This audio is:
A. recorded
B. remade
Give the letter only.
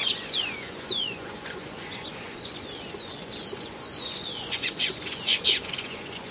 B